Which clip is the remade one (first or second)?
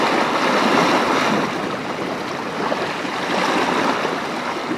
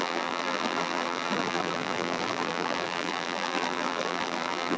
second